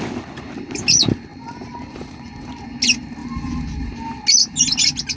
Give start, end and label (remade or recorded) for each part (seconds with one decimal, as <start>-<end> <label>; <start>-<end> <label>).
0.0-1.3 recorded; 1.3-2.5 remade; 2.5-3.2 recorded; 3.2-3.9 remade; 3.9-5.2 recorded